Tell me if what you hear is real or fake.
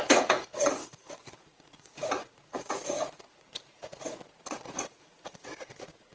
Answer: fake